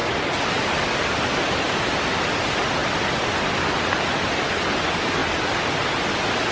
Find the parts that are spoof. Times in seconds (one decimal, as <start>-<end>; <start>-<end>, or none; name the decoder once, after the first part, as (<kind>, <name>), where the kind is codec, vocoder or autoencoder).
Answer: none